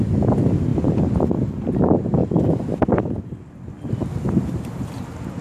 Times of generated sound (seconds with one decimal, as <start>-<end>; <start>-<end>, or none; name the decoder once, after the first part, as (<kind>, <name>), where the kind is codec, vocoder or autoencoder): none